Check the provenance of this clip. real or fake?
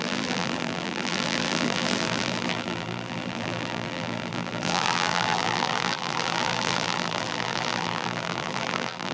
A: fake